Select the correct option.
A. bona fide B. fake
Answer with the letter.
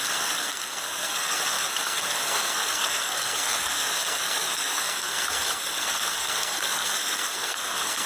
B